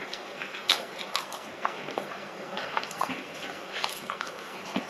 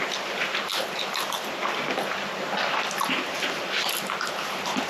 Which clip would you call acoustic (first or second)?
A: second